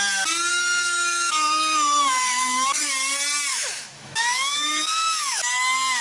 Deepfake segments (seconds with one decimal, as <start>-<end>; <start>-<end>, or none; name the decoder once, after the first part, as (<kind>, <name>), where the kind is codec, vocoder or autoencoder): 0.5-2.9 (autoencoder, DAC-VAE); 3.5-5.4